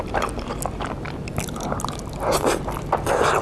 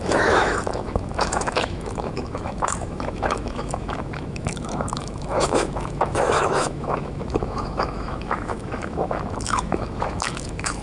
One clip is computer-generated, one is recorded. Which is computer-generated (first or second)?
second